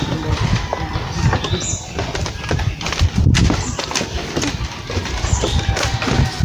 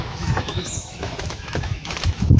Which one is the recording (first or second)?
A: first